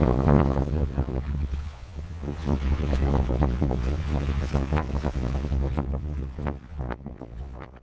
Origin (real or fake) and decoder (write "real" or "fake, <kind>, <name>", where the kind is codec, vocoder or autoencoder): fake, vocoder, Vocos